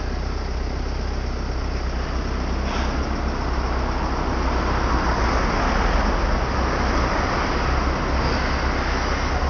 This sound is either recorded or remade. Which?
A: recorded